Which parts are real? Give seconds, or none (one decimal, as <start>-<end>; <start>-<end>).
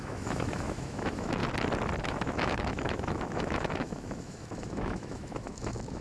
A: 1.4-2.0